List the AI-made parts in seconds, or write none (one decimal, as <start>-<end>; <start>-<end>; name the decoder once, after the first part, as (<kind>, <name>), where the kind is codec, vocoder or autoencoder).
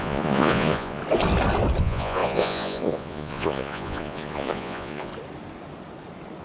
0.0-1.0 (vocoder, Vocos); 1.8-5.1